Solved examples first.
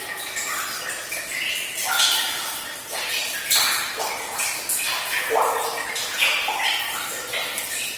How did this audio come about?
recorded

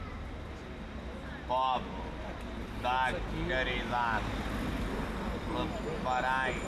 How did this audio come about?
recorded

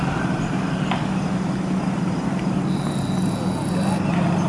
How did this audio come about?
recorded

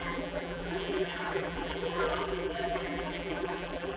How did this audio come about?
remade